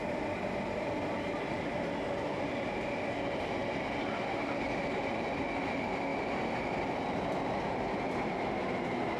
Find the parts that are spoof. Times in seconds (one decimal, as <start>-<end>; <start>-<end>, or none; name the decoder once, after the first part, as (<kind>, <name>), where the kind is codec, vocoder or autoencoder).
none

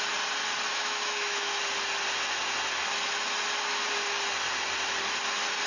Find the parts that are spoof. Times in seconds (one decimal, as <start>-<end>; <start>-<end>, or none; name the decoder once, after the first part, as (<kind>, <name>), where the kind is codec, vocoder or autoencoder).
0.7-1.6 (autoencoder, DAC-VAE)

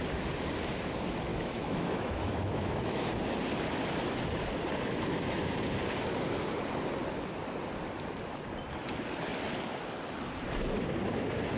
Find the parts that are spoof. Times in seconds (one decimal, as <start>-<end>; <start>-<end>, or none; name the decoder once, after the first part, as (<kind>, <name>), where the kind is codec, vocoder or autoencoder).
1.3-3.1 (autoencoder, DAC-VAE)

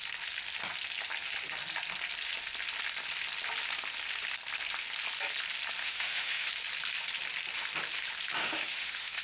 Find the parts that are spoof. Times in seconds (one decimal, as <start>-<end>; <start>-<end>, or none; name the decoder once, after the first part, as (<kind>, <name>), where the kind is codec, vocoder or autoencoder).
5.8-6.5 (autoencoder, DAC-VAE); 8.4-9.2

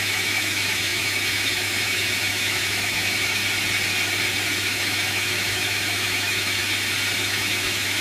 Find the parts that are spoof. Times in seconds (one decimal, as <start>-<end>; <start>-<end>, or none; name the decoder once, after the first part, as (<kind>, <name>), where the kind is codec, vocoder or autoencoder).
0.0-3.4 (autoencoder, DAC-VAE); 4.6-6.6; 7.2-8.0